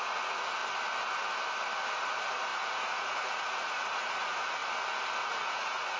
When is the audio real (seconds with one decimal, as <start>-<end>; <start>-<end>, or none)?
0.6-1.9; 4.6-5.2